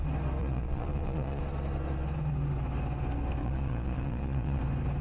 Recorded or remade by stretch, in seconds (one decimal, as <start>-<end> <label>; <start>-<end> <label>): 0.0-0.4 recorded; 0.4-1.4 remade; 1.4-3.4 recorded; 3.4-4.6 remade; 4.6-5.0 recorded